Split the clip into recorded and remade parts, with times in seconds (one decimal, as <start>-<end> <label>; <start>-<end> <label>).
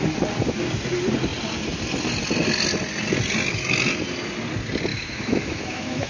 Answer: 0.0-4.9 recorded; 4.9-6.1 remade